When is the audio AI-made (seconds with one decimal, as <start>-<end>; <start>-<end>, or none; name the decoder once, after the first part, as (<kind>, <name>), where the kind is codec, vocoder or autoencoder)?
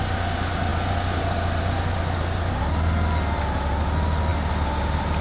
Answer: none